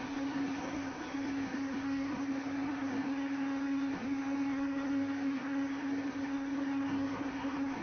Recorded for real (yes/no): no